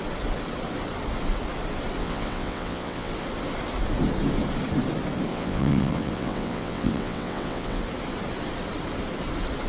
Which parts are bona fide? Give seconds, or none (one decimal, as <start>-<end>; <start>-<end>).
0.0-2.0; 3.1-5.3; 7.8-9.7